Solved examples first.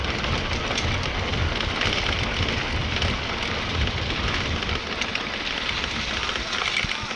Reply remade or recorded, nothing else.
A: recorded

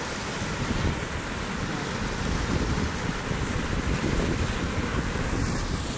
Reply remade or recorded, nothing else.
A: recorded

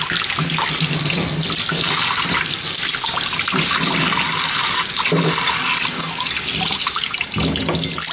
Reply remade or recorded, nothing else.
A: recorded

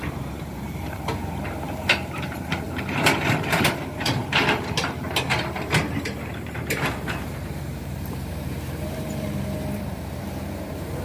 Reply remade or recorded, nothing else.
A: remade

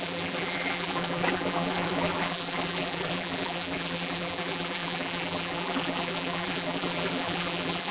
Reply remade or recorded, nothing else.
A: remade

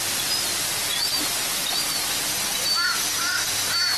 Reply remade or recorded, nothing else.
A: recorded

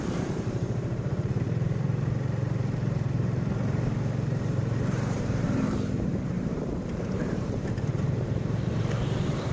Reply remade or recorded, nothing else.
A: remade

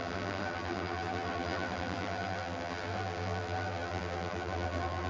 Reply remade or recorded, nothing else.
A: remade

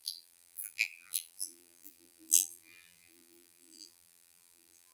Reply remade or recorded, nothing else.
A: remade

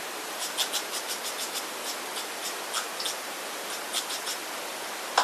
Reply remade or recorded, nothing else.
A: recorded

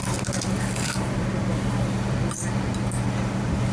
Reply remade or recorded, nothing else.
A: remade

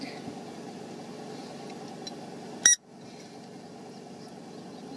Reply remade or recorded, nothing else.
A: recorded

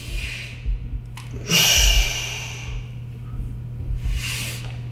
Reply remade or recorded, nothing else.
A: recorded